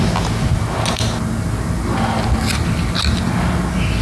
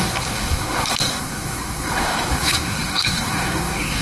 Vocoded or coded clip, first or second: second